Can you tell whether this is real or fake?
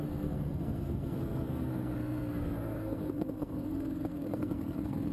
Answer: fake